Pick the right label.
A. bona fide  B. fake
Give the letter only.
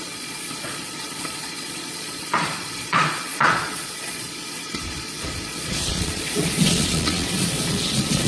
B